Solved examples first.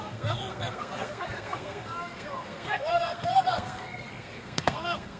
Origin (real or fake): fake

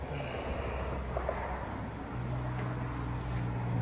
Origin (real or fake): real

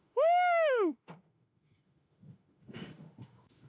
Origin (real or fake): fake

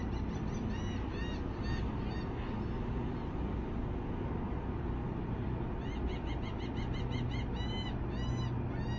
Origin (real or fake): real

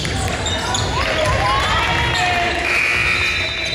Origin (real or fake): real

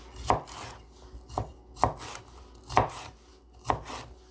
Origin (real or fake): real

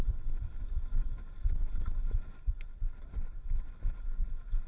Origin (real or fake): real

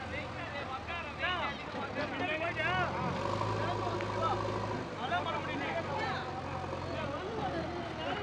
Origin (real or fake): real